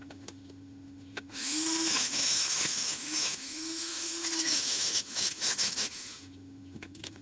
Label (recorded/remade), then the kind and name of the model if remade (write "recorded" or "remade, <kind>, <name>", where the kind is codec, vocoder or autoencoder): remade, autoencoder, DAC-VAE